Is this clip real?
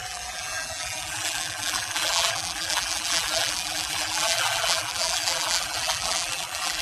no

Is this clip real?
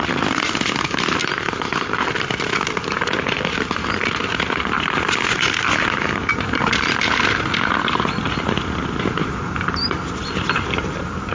yes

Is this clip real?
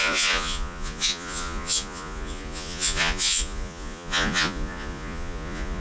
no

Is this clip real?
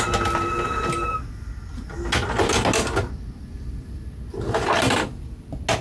yes